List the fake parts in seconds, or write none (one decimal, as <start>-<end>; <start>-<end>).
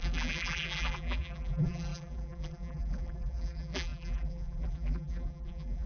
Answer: 0.0-5.9